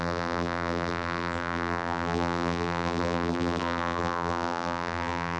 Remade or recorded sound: remade